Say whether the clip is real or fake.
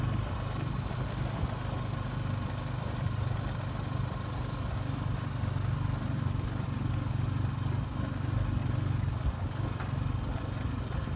real